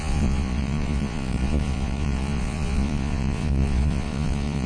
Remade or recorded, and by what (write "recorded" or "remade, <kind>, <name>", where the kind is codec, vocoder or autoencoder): remade, vocoder, Vocos